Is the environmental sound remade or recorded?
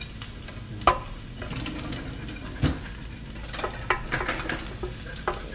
recorded